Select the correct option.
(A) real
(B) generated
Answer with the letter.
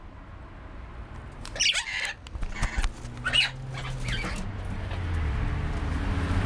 A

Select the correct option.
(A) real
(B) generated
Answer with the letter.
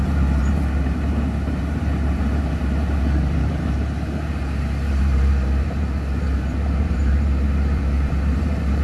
B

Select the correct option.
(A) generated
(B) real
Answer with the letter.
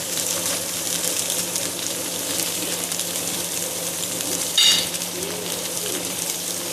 A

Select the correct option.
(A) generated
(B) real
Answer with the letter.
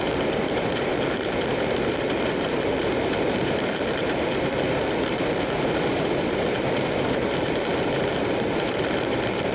A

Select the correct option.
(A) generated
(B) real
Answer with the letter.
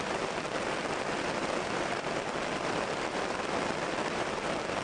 A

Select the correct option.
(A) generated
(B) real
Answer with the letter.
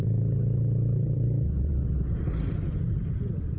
A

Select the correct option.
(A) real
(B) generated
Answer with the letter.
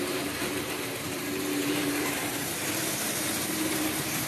B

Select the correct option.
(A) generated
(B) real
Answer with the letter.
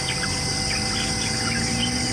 B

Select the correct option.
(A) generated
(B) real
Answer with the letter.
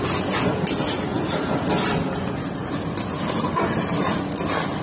B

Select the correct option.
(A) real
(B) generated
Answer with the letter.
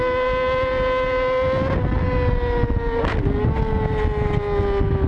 A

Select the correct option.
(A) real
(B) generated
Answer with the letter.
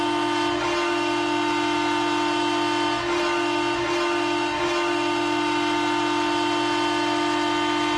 A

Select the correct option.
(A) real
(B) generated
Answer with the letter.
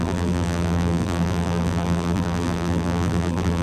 B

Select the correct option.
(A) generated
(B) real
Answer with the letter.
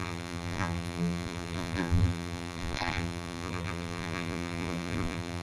A